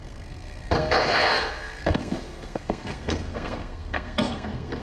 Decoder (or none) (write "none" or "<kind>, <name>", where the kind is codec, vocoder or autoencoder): codec, SNAC